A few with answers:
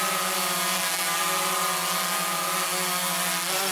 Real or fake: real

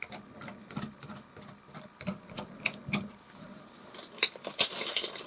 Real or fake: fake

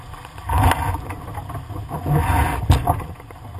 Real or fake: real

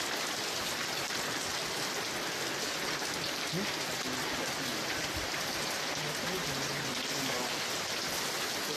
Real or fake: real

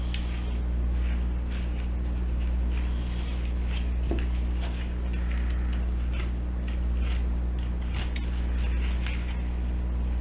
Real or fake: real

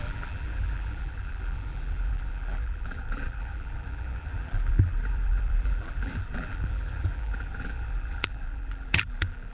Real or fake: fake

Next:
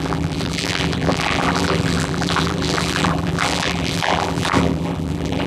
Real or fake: fake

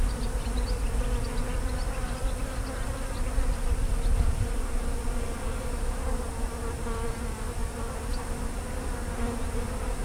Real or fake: real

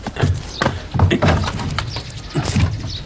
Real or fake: real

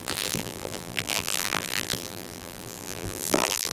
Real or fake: fake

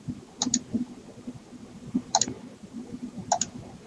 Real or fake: fake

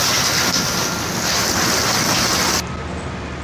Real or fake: real